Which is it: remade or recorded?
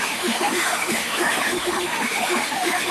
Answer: remade